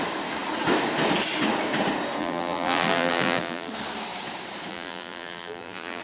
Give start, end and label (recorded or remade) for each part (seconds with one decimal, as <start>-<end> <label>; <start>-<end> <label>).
0.0-2.2 recorded; 2.2-3.7 remade; 3.7-4.7 recorded; 4.7-6.0 remade